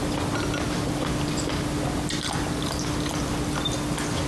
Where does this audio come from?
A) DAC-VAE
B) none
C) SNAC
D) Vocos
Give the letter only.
B